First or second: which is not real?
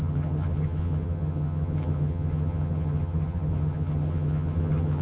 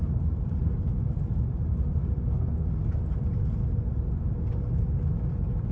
first